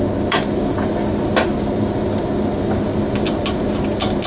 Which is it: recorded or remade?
recorded